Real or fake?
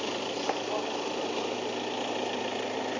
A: real